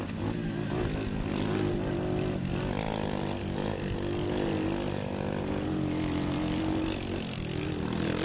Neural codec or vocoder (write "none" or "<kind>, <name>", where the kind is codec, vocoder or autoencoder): none